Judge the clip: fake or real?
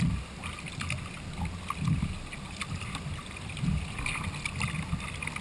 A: real